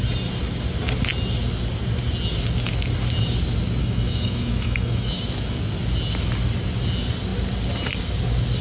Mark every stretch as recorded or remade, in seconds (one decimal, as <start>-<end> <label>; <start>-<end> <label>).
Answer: 0.0-3.8 recorded; 3.8-5.1 remade; 5.1-8.6 recorded

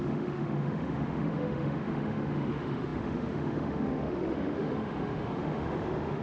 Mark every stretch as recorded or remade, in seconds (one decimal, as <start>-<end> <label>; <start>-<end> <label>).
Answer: 0.0-6.2 remade

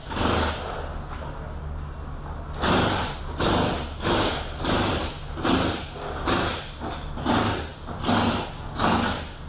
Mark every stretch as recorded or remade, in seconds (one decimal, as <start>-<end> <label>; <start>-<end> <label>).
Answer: 0.0-9.5 recorded